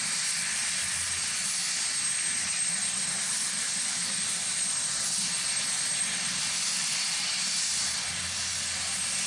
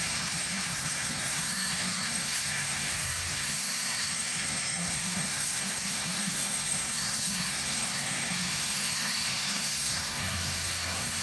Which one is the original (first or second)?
first